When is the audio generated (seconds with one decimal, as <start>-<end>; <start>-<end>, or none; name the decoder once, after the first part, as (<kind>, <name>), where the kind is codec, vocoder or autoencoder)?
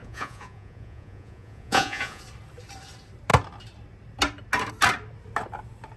0.0-2.2 (vocoder, Vocos)